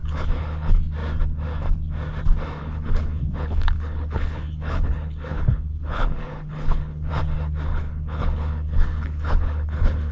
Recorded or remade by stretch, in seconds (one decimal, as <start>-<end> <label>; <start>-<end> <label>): 0.0-0.8 remade; 0.8-2.6 recorded; 2.6-7.1 remade; 7.1-7.7 recorded; 7.7-10.1 remade